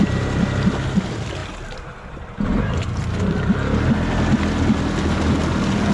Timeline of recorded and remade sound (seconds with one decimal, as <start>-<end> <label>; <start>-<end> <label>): 0.0-5.9 recorded